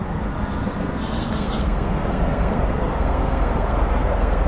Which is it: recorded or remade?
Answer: remade